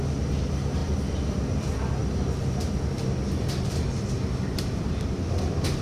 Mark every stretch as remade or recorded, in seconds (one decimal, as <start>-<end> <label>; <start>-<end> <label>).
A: 0.0-5.8 recorded